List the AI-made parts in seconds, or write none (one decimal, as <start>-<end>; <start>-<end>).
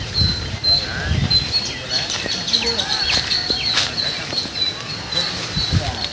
none